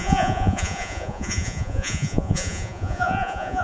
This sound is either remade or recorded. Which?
remade